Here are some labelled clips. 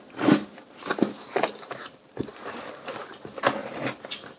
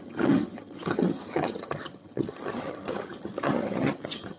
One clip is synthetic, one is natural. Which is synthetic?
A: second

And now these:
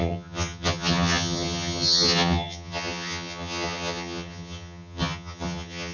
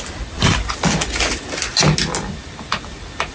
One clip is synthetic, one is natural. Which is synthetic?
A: first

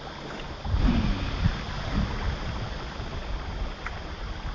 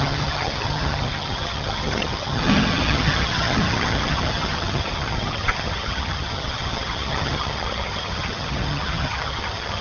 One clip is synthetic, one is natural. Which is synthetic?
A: second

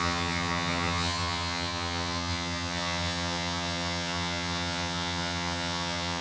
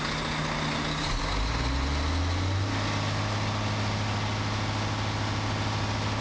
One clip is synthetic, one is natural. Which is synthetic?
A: first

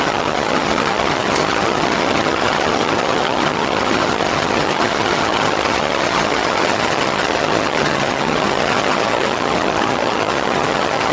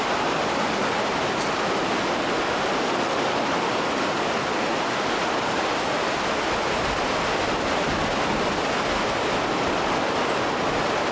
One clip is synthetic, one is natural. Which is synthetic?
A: first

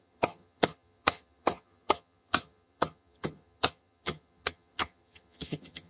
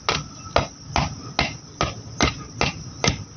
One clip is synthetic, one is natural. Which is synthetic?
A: first